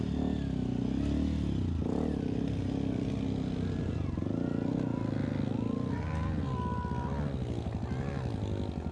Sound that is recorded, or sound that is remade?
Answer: recorded